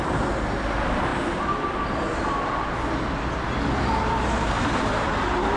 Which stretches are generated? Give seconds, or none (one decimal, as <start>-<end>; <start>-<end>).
none